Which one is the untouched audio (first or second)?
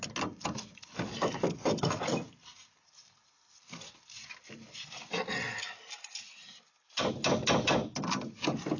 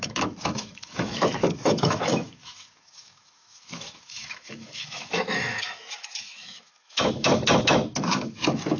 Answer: first